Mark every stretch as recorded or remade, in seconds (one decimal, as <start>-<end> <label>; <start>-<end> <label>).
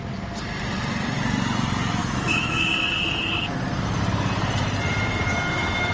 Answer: 0.0-2.0 recorded; 2.0-2.7 remade; 2.7-5.9 recorded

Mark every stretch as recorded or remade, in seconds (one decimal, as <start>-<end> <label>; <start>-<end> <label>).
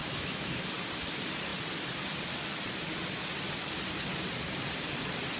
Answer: 0.0-0.6 remade; 0.6-5.4 recorded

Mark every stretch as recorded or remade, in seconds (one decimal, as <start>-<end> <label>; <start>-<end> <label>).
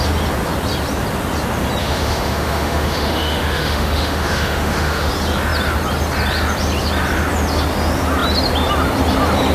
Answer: 0.0-1.8 recorded; 1.8-5.1 remade; 5.1-9.5 recorded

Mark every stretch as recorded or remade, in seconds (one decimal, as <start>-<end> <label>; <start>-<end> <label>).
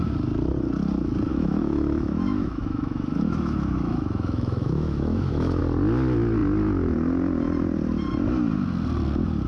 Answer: 0.0-1.3 recorded; 1.3-5.6 remade; 5.6-9.5 recorded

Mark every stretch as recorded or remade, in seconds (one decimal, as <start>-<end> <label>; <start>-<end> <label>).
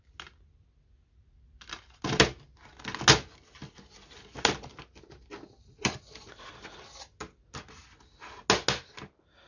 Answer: 0.0-9.5 recorded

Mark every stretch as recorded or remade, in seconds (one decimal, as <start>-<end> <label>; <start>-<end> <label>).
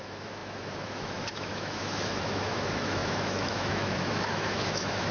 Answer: 0.0-5.1 remade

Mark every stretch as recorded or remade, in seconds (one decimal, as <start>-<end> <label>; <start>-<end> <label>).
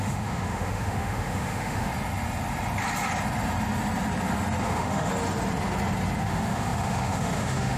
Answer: 0.0-1.9 remade; 1.9-4.6 recorded; 4.6-5.1 remade; 5.1-6.2 recorded; 6.2-7.8 remade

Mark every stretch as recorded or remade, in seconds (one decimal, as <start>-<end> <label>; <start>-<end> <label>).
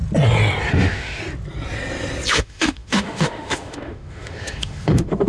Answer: 0.0-0.7 recorded; 0.7-1.2 remade; 1.2-2.3 recorded; 2.3-5.3 remade